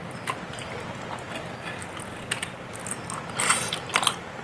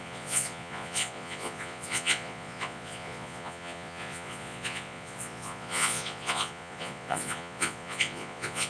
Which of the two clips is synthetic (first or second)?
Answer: second